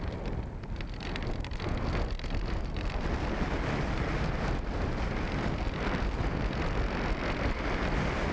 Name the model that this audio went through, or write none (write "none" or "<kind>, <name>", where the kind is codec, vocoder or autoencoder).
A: none